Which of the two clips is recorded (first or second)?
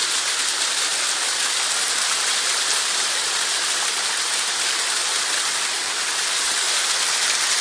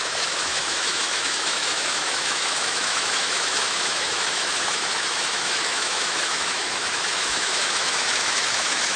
first